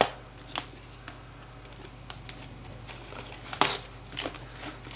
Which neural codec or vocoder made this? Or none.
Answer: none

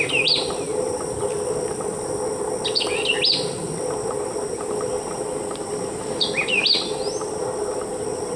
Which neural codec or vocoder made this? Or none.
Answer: none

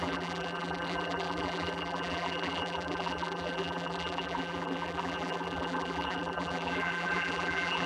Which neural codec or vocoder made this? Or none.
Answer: vocoder, BigVGAN v2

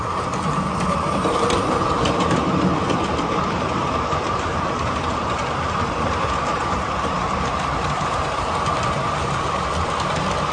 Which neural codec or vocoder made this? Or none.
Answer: vocoder, BigVGAN v2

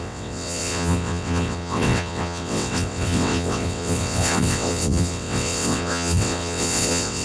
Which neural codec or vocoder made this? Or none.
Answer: vocoder, WaveNeXt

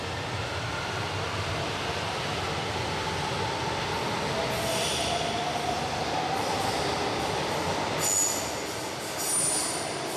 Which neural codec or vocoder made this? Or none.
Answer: none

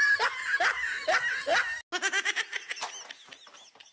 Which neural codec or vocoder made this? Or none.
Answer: none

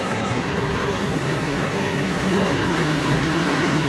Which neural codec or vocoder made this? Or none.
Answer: codec, SNAC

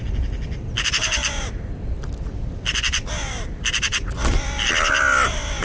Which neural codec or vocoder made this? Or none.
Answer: none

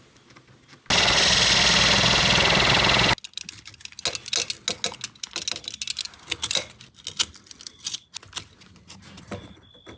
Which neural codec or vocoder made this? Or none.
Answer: none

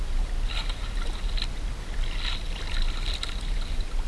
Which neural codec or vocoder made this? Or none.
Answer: none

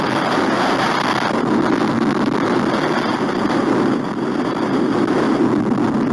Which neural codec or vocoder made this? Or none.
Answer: none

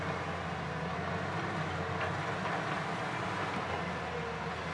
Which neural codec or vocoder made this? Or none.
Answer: none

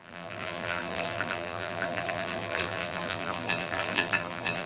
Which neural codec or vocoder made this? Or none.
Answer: vocoder, BigVGAN v2